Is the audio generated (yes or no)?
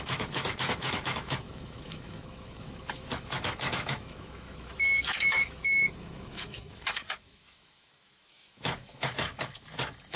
yes